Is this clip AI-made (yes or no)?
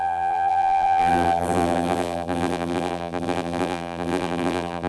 yes